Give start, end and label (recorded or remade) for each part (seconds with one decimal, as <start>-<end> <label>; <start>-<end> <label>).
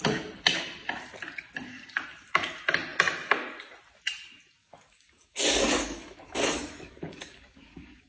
0.0-4.6 recorded; 4.6-8.1 remade